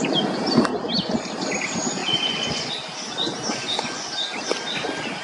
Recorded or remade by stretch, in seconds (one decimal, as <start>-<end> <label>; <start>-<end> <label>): 0.0-2.0 recorded; 2.0-2.7 remade; 2.7-3.6 recorded; 3.6-4.1 remade; 4.1-5.2 recorded